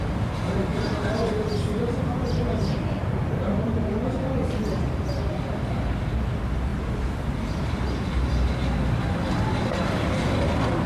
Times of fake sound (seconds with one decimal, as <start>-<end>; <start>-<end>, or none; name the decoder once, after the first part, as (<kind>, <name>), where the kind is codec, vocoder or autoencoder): 0.0-0.7 (vocoder, BigVGAN v2); 1.3-3.0; 3.7-6.7